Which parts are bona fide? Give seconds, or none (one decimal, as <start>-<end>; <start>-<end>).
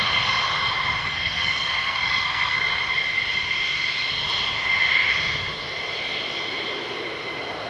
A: 0.0-1.0; 2.6-7.7